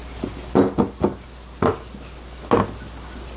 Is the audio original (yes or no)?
yes